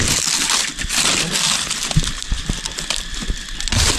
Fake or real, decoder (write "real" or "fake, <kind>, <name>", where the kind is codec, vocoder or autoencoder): real